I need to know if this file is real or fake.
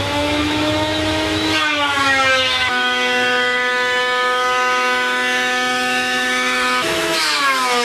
fake